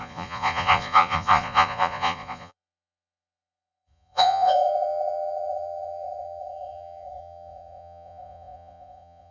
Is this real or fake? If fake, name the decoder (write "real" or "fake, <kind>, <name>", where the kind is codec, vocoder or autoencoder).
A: fake, vocoder, Vocos